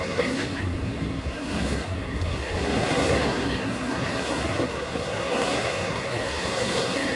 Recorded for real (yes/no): no